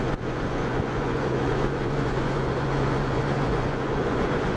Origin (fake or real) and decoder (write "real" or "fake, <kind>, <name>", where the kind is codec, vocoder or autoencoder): fake, vocoder, Vocos